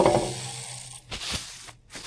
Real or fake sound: real